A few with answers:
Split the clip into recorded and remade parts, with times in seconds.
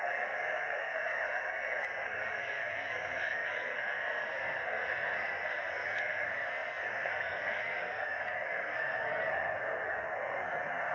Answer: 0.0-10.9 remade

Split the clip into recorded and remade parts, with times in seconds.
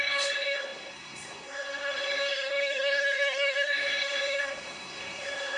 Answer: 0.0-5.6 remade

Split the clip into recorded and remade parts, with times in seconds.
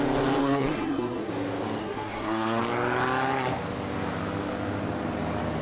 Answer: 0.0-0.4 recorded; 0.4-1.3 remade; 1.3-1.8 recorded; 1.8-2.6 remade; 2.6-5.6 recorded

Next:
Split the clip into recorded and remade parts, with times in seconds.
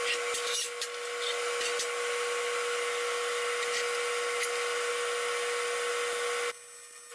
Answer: 0.0-7.1 recorded